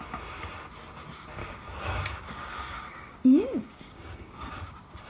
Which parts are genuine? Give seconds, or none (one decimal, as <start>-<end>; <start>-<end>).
0.0-1.4; 4.5-5.1